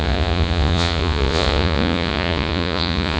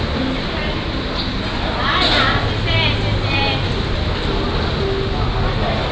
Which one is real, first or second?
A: second